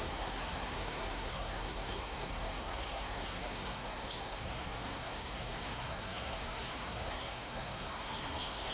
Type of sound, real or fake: fake